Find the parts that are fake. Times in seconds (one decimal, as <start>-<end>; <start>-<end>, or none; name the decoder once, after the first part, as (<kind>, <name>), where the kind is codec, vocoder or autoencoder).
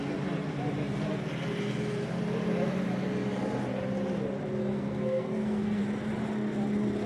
4.6-5.8 (codec, SNAC)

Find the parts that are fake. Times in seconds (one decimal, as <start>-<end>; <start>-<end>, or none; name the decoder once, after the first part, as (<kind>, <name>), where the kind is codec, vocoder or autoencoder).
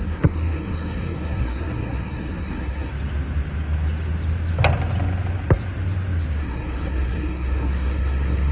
0.0-2.9 (codec, SNAC); 6.4-8.5